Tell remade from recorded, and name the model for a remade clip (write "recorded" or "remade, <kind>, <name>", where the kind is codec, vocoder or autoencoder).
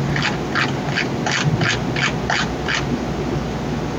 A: recorded